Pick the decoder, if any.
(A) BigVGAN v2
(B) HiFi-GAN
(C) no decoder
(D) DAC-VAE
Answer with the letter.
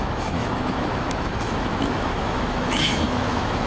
D